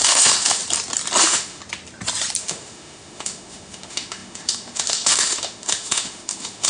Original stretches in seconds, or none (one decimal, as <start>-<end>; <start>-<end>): 0.6-1.2; 1.6-2.4